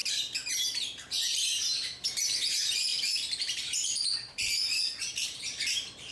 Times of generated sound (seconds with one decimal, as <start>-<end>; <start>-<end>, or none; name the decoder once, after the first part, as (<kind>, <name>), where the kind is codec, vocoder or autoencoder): 0.5-1.5 (vocoder, BigVGAN v2); 2.1-6.1